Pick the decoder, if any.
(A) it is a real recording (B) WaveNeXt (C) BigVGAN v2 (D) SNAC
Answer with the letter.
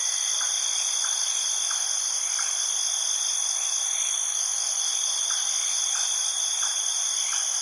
A